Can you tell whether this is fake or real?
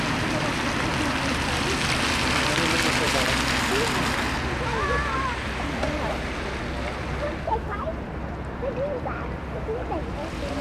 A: real